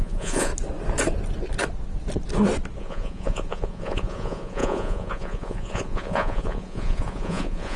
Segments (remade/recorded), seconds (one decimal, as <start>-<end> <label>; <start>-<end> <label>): 0.0-0.5 remade; 0.5-2.8 recorded; 2.8-7.8 remade